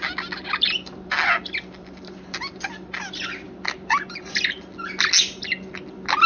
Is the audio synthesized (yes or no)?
no